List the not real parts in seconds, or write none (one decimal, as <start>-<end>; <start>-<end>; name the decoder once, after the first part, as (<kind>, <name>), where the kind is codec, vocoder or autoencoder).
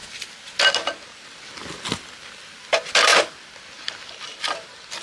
none